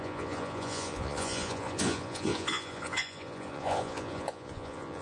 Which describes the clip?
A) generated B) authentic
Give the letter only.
A